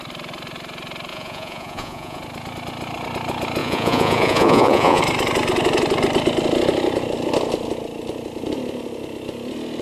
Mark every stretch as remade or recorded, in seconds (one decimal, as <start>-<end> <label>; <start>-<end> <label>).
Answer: 0.0-1.1 recorded; 1.1-2.2 remade; 2.2-3.6 recorded; 3.6-5.0 remade; 5.0-9.8 recorded